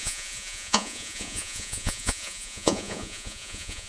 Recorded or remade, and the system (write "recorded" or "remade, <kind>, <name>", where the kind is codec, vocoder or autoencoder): remade, vocoder, Vocos